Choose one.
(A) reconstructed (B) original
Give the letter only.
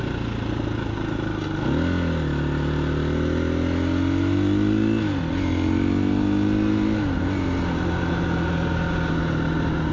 B